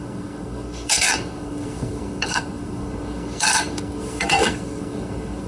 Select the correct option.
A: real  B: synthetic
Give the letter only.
B